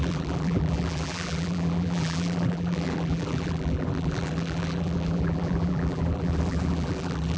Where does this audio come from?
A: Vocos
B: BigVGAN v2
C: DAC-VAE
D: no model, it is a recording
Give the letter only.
B